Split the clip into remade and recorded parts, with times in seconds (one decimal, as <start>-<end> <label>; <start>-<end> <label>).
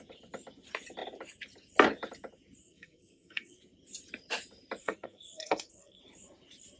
0.0-2.6 recorded; 2.6-3.6 remade; 3.6-4.8 recorded; 4.8-6.0 remade; 6.0-6.8 recorded